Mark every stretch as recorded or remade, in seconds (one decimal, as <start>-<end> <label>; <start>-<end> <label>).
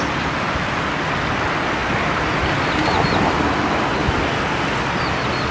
0.0-5.5 recorded